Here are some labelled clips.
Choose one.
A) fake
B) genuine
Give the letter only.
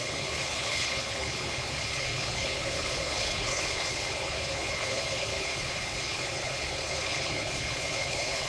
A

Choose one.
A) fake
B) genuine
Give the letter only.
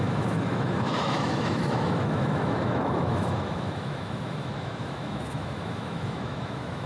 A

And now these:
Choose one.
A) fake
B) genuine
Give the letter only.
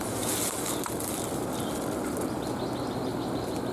B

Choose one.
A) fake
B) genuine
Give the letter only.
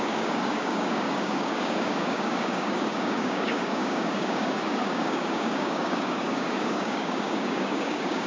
A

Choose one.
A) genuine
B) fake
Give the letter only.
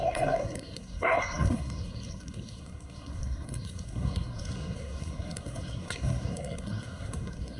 B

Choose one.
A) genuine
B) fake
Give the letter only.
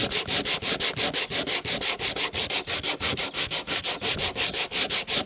A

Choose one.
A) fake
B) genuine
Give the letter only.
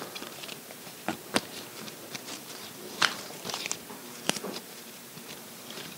A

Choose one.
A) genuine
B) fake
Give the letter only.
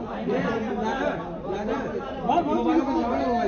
A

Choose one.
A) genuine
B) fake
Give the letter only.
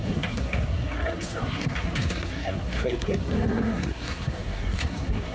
B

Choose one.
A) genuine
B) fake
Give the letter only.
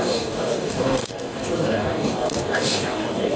B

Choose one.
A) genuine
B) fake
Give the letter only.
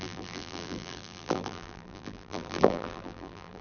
B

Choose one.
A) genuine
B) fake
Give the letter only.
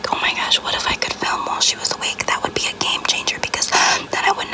A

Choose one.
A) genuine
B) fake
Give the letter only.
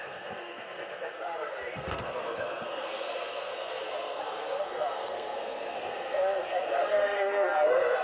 B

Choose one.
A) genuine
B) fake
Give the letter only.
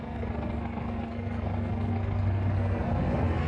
B